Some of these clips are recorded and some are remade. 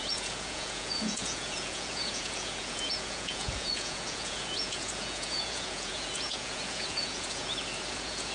remade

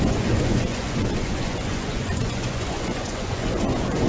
remade